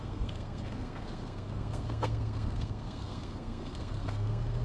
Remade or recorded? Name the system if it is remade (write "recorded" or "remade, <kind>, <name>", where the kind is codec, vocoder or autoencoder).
remade, codec, SNAC